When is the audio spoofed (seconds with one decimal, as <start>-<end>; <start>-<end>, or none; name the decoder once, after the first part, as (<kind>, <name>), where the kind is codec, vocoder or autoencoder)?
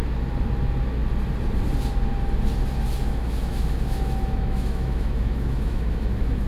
3.0-6.5 (autoencoder, DAC-VAE)